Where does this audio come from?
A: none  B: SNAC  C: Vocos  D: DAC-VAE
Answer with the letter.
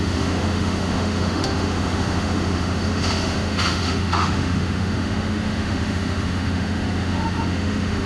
D